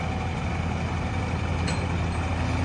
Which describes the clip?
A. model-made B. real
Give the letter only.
B